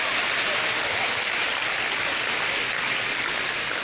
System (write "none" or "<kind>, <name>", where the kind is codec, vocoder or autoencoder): none